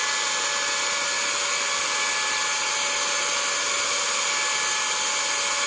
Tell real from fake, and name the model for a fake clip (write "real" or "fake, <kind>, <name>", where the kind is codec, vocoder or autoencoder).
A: real